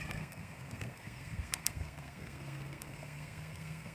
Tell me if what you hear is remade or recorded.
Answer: remade